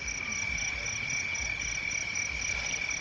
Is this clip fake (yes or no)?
no